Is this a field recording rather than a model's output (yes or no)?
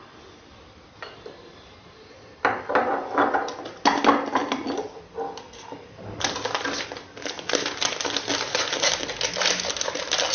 yes